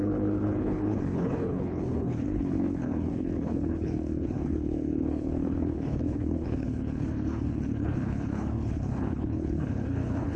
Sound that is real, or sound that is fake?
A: fake